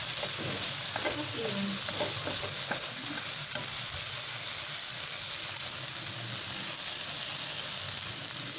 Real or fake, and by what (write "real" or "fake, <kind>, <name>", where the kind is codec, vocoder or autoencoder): real